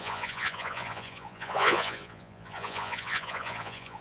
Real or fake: fake